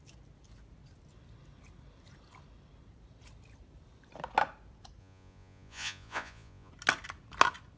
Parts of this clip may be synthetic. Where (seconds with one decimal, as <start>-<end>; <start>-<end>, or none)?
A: 5.0-6.7